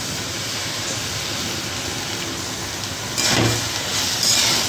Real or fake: real